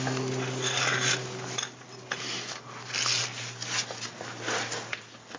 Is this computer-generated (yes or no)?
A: no